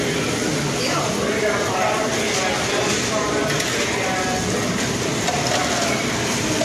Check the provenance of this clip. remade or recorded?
recorded